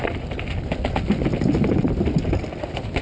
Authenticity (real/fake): real